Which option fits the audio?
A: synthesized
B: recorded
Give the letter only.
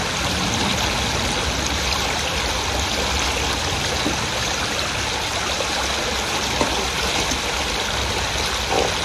B